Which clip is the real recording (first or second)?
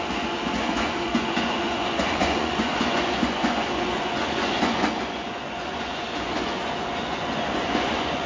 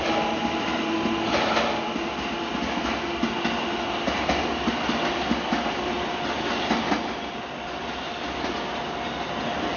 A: second